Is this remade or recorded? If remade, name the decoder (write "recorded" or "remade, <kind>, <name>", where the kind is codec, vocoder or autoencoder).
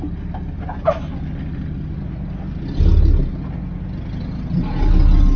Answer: recorded